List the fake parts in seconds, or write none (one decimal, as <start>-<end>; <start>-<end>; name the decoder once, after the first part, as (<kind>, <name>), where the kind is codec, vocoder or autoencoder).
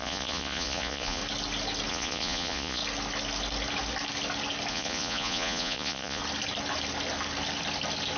0.0-1.2 (vocoder, Vocos); 1.9-2.8; 4.7-6.2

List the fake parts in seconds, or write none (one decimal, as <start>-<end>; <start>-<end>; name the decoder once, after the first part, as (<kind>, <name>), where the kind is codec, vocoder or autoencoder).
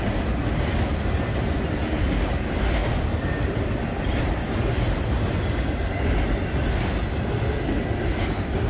none